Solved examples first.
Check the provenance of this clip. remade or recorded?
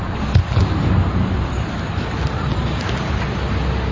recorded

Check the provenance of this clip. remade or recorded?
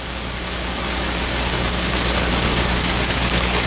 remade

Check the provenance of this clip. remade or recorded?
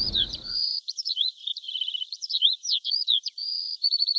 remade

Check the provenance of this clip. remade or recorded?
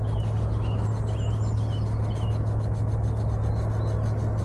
recorded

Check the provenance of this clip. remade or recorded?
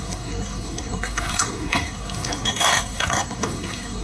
remade